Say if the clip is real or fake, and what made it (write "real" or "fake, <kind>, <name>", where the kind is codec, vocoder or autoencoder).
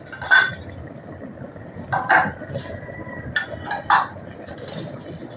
real